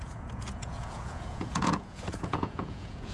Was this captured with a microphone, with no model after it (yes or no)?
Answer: no